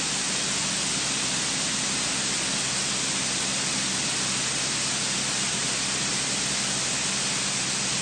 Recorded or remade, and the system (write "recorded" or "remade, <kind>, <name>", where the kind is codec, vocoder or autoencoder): recorded